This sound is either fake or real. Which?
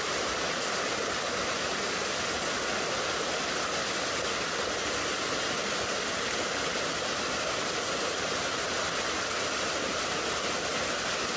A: real